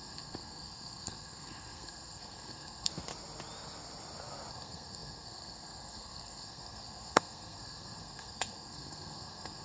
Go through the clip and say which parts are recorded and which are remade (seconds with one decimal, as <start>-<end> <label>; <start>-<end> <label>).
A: 0.0-2.9 remade; 2.9-4.5 recorded; 4.5-9.6 remade